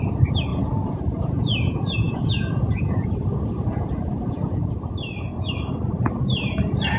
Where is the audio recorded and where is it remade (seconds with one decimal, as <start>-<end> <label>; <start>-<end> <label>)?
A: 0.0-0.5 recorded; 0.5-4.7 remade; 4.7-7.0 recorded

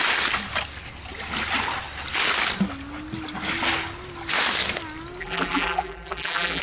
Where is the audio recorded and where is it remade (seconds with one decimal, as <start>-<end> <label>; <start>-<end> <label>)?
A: 0.0-5.2 recorded; 5.2-6.6 remade

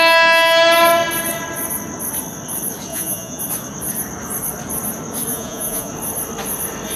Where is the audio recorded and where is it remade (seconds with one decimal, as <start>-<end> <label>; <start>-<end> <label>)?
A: 0.0-2.9 recorded; 2.9-3.4 remade; 3.4-5.3 recorded; 5.3-5.9 remade; 5.9-7.0 recorded